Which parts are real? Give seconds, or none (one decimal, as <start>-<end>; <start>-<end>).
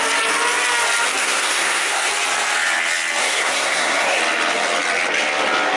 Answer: 0.0-1.2; 2.1-3.2; 4.2-5.8